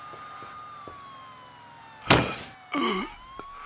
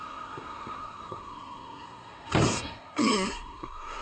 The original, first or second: first